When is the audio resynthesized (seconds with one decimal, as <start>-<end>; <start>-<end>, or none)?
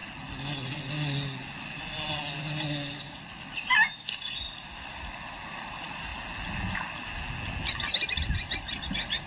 none